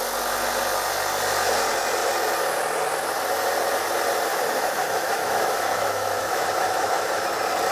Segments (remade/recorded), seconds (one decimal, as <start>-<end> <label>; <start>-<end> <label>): 0.0-4.3 recorded; 4.3-7.3 remade; 7.3-7.7 recorded